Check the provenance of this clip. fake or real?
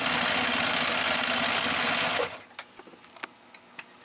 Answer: real